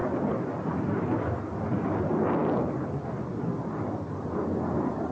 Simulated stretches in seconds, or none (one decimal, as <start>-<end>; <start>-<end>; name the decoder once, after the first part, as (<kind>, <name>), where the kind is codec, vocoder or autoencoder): 0.0-1.6 (vocoder, BigVGAN v2); 2.4-3.7